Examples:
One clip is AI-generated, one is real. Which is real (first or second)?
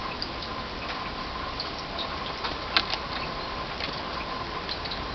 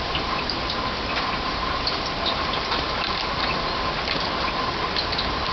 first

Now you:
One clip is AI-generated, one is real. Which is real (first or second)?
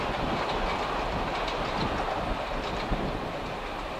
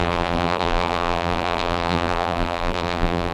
first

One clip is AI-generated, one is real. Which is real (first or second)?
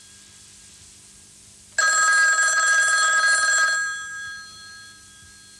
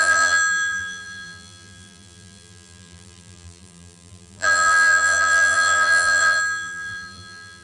first